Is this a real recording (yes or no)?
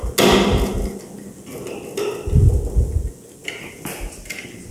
yes